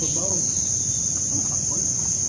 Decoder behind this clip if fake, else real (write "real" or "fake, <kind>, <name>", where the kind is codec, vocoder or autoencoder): fake, vocoder, Vocos